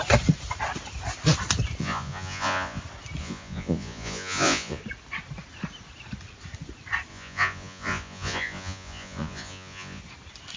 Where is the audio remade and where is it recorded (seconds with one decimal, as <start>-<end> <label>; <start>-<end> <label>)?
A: 0.0-1.8 recorded; 1.8-2.8 remade; 2.8-3.2 recorded; 3.2-4.8 remade; 4.8-7.1 recorded; 7.1-10.0 remade; 10.0-10.6 recorded